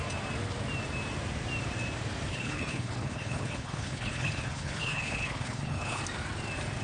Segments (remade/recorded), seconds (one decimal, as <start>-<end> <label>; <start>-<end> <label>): 0.0-2.3 recorded; 2.3-6.0 remade; 6.0-6.8 recorded